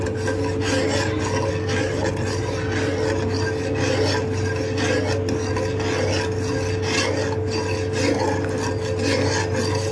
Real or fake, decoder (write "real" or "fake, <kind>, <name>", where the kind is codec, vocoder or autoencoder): real